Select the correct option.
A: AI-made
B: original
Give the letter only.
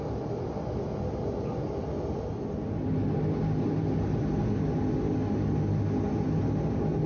B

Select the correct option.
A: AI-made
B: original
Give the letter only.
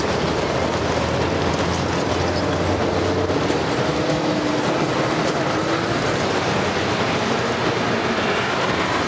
B